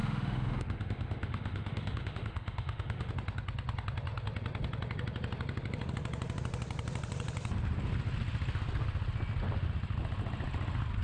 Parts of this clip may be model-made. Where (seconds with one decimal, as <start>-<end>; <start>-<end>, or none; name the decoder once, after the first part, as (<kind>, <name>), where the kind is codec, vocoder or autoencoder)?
0.0-3.1 (autoencoder, DAC-VAE)